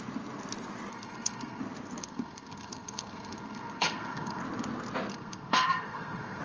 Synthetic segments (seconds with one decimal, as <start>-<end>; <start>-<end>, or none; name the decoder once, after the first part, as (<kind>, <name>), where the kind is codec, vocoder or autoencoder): 0.9-1.6 (codec, SNAC); 2.0-4.4; 5.1-6.4